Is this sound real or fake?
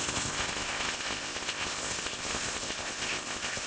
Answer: fake